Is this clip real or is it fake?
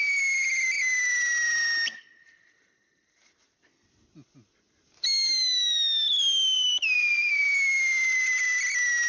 real